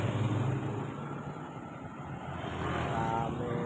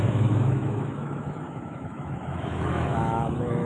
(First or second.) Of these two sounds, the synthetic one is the second